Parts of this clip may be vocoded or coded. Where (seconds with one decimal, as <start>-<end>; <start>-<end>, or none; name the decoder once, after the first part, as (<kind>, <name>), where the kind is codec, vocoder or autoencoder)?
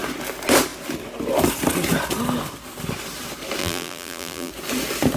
3.6-4.5 (vocoder, BigVGAN v2)